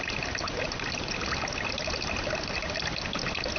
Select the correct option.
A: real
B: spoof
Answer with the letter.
A